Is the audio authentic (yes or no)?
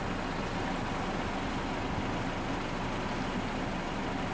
yes